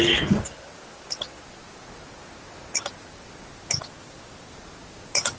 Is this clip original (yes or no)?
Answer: yes